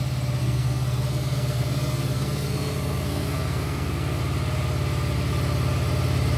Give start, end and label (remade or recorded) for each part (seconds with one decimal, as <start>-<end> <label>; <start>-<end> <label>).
0.0-0.4 recorded; 0.4-4.2 remade; 4.2-6.4 recorded